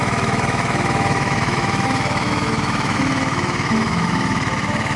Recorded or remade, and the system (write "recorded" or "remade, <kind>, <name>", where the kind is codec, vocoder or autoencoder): remade, autoencoder, DAC-VAE